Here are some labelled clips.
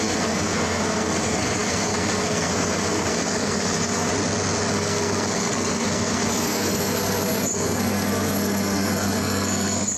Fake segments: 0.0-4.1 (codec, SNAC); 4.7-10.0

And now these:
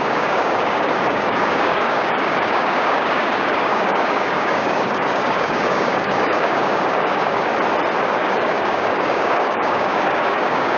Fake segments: 0.0-7.5 (codec, DAC); 8.0-10.8

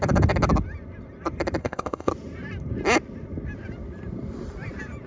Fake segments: 1.6-2.1 (codec, ZipCodec)

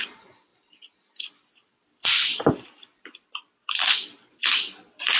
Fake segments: 0.0-5.2 (vocoder, BigVGAN v2)

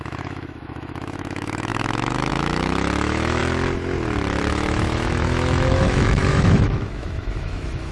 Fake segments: 0.0-3.4 (autoencoder, DAC-VAE); 4.5-7.9

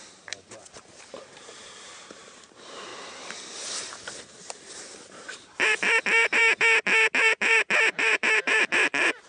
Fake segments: 0.0-2.9 (vocoder, BigVGAN v2); 5.1-6.4; 7.2-9.3

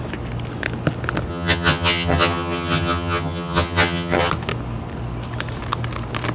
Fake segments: 1.3-4.3 (vocoder, HiFi-GAN)

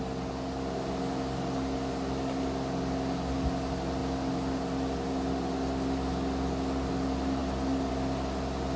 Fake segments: none